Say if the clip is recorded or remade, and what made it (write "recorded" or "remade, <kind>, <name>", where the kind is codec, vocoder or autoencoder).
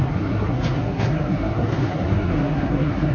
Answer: remade, codec, SNAC